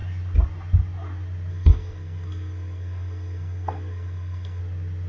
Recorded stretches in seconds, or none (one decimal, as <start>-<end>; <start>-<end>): 0.0-1.5; 4.6-5.1